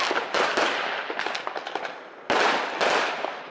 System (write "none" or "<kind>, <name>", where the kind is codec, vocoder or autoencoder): none